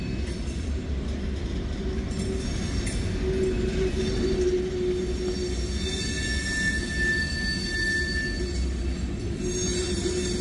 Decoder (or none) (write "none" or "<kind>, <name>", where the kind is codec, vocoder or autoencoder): none